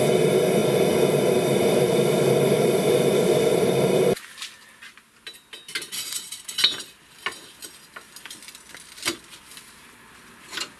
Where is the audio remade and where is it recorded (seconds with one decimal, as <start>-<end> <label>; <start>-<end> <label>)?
0.0-10.8 recorded